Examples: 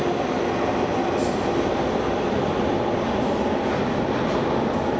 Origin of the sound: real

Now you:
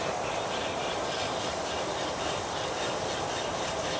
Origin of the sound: real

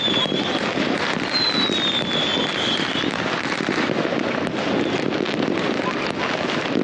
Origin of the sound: real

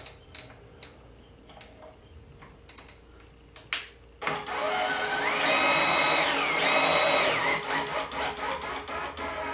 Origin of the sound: real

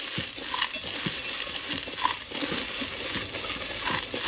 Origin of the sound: real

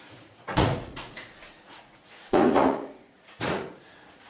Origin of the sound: fake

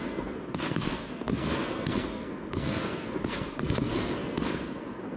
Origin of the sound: fake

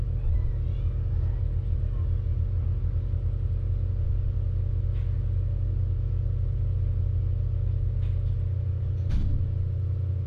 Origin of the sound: real